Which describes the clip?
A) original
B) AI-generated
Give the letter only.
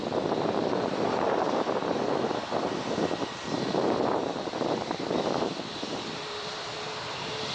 B